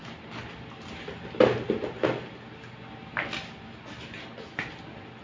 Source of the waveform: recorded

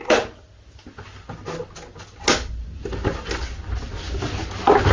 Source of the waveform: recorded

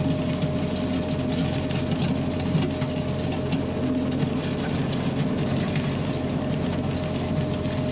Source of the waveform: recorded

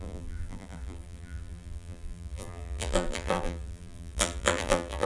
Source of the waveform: remade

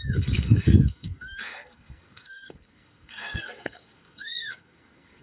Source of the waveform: remade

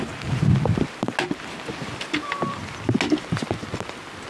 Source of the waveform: recorded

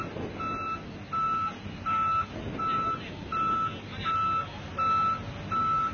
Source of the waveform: recorded